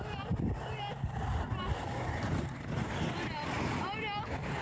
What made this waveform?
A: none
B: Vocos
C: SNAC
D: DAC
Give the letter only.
A